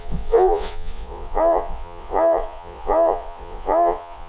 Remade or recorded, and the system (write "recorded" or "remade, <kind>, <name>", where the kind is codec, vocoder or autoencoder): remade, vocoder, Vocos